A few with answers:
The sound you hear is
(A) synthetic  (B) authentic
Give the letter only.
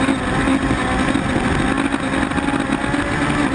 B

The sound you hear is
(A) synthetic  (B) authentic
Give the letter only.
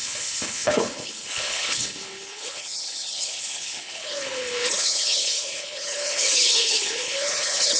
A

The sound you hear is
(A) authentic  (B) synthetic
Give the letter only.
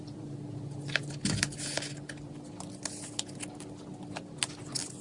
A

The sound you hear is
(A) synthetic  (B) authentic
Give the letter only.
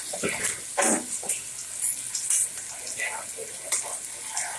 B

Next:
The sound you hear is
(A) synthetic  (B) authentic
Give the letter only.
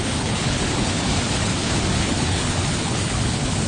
A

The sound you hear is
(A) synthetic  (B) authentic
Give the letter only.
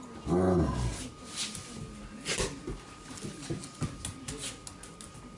B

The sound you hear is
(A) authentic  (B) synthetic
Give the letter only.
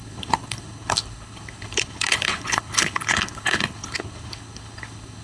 B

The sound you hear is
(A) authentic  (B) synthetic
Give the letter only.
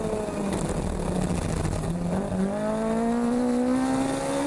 A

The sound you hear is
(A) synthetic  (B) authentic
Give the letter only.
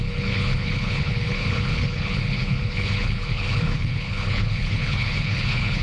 A